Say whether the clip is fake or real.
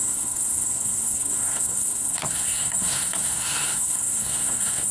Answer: fake